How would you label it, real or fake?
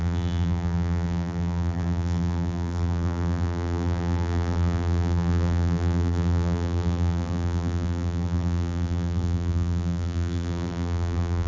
fake